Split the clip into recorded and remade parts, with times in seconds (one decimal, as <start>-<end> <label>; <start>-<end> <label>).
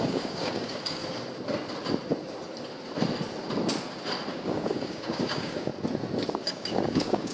0.0-1.0 remade; 1.0-4.3 recorded; 4.3-5.7 remade; 5.7-6.3 recorded; 6.3-7.3 remade